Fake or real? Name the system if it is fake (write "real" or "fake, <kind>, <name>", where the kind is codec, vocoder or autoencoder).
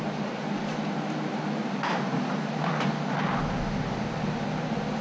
real